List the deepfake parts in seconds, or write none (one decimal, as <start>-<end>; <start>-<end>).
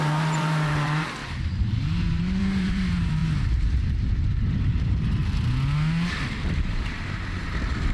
0.0-5.2; 6.4-7.9